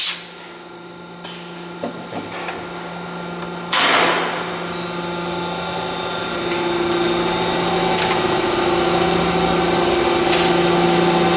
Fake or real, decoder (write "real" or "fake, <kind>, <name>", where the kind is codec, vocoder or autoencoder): real